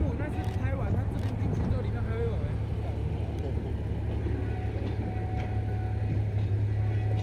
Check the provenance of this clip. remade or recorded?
recorded